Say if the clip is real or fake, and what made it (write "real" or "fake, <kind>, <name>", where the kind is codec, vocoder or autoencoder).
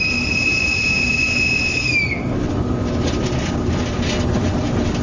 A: real